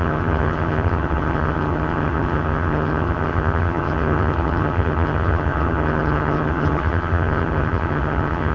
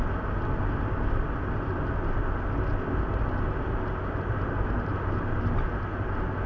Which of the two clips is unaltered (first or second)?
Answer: second